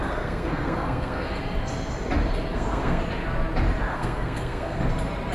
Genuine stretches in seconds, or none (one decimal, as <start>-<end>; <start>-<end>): 1.4-2.5; 3.0-3.9; 4.8-5.3